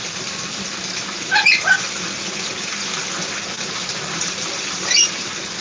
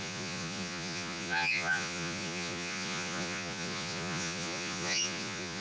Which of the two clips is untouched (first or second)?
first